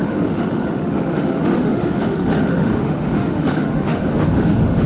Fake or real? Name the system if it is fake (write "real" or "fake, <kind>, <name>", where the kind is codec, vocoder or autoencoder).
fake, autoencoder, DAC-VAE